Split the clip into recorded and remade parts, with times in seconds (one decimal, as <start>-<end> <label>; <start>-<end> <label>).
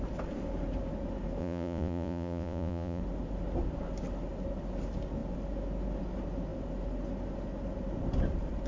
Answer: 0.0-1.4 recorded; 1.4-3.0 remade; 3.0-8.7 recorded